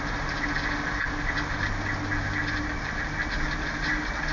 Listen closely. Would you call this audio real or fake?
real